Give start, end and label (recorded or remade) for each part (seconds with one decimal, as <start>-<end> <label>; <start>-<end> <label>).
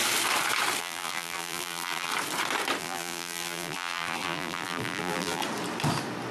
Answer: 0.0-0.8 recorded; 0.8-2.1 remade; 2.1-2.8 recorded; 2.8-5.4 remade; 5.4-6.3 recorded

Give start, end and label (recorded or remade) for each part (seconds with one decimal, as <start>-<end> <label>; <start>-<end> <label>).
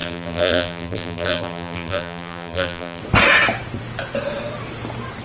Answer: 0.0-3.0 remade; 3.0-5.2 recorded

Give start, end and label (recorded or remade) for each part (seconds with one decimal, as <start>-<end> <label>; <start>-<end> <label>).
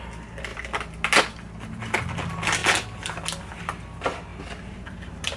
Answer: 0.0-5.4 recorded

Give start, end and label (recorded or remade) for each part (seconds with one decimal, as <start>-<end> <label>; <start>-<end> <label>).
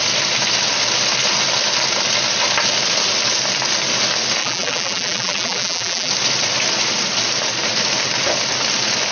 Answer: 0.0-4.4 recorded; 4.4-6.1 remade; 6.1-9.1 recorded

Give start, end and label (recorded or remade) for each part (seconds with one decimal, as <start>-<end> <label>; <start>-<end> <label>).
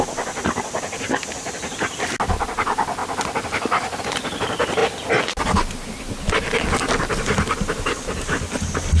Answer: 0.0-9.0 recorded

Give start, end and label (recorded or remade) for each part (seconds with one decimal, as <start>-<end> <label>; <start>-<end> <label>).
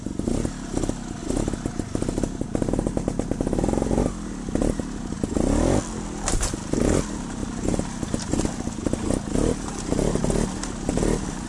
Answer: 0.0-7.4 recorded; 7.4-8.3 remade; 8.3-11.5 recorded